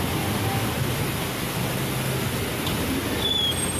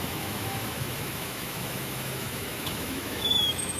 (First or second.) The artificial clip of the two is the second